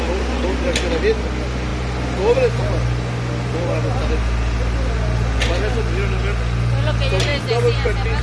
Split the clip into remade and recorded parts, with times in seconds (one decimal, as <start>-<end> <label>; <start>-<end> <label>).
0.0-7.3 recorded; 7.3-8.2 remade